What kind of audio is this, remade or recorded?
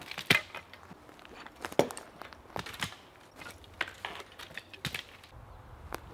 recorded